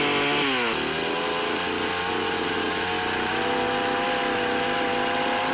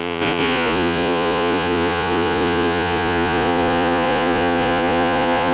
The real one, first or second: first